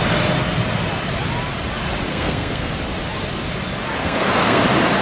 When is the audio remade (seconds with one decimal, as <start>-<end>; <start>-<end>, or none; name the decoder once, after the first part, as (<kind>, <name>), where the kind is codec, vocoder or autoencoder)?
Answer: 2.1-2.7 (codec, SNAC); 4.0-4.6